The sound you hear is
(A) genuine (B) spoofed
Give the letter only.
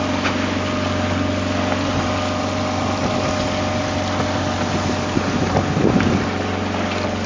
A